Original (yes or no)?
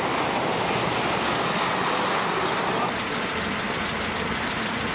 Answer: yes